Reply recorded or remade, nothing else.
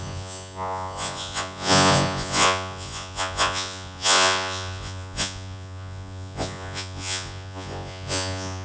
remade